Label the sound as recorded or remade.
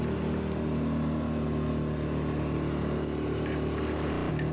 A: recorded